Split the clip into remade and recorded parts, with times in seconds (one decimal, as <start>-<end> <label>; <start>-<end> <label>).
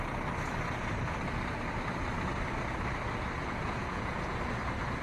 0.0-3.4 recorded; 3.4-4.4 remade; 4.4-5.0 recorded